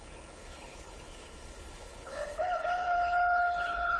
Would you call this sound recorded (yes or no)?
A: no